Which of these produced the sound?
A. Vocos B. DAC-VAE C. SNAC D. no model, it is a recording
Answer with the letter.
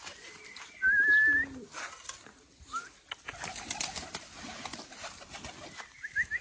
D